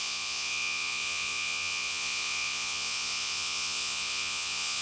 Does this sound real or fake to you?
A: fake